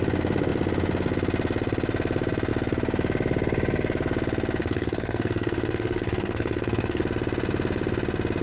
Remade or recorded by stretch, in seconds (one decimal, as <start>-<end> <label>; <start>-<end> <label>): 0.0-4.6 recorded; 4.6-7.0 remade; 7.0-8.4 recorded